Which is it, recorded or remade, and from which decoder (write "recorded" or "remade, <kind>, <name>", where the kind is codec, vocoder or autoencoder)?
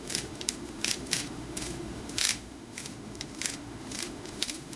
remade, autoencoder, DAC-VAE